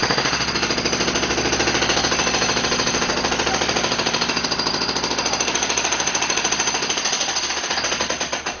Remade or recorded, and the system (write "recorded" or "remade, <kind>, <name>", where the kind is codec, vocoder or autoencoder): recorded